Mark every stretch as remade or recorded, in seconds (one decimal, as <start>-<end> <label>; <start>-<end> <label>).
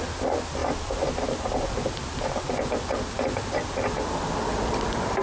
0.0-5.2 recorded